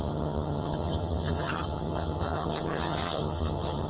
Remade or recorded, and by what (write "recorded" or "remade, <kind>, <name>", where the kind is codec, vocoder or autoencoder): remade, vocoder, HiFi-GAN